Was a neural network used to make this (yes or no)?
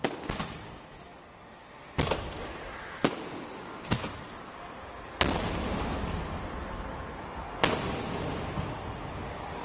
no